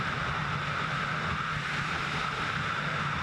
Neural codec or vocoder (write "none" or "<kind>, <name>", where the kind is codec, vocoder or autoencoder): none